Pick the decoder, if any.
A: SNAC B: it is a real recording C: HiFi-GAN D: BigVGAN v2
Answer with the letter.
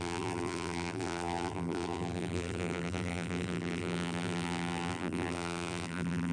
D